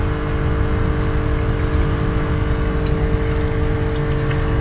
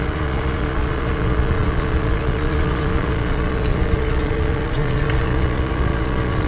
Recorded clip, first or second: first